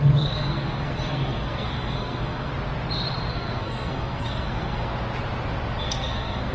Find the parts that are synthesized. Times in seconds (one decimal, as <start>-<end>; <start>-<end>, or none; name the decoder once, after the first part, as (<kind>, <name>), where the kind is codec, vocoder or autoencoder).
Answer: 0.0-2.5 (codec, SNAC); 3.3-4.9; 5.8-6.5